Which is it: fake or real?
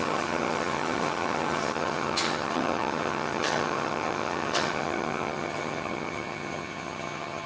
fake